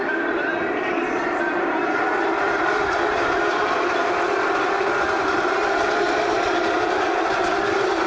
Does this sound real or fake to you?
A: fake